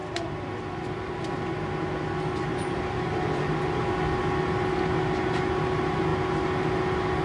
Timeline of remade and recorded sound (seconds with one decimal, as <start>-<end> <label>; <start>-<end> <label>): 0.0-1.1 remade; 1.1-2.5 recorded; 2.5-3.4 remade; 3.4-7.2 recorded